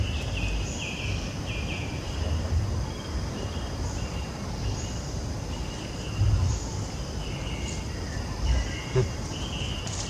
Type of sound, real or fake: real